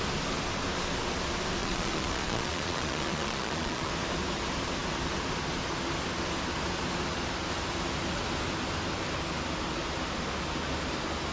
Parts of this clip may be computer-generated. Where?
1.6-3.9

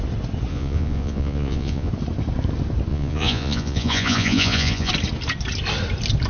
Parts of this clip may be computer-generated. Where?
0.5-1.9; 2.9-4.9

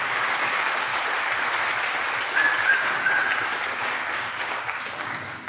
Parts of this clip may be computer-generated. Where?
0.0-0.9; 2.8-3.2; 3.8-5.5

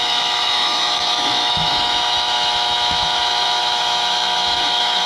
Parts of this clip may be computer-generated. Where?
0.0-5.1

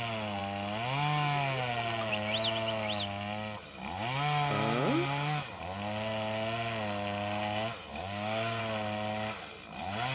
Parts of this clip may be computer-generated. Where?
7.9-8.6